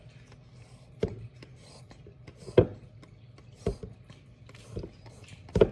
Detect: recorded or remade recorded